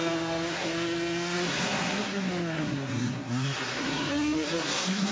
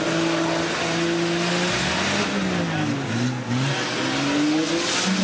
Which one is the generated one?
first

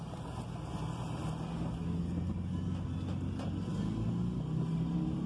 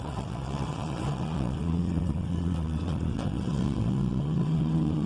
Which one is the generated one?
second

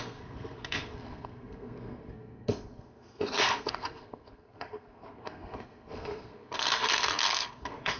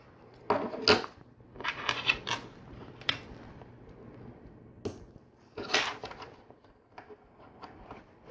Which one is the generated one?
first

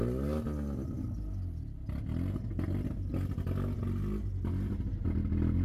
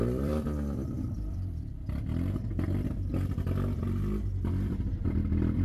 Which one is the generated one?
second